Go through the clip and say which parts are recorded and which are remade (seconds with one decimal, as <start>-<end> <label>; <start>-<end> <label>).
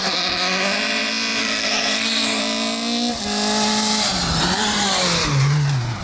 0.0-1.4 recorded; 1.4-2.4 remade; 2.4-6.0 recorded